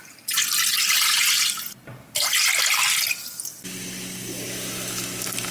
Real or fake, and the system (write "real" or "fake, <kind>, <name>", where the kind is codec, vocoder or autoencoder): real